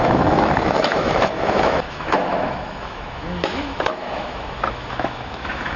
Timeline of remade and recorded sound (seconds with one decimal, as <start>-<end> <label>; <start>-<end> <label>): 0.0-5.8 remade